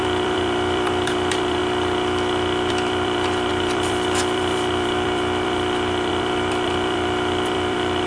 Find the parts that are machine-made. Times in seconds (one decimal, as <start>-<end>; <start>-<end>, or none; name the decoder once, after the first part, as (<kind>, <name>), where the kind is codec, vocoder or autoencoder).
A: 0.0-1.6 (vocoder, BigVGAN v2); 2.7-8.1